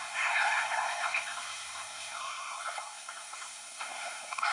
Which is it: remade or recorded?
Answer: remade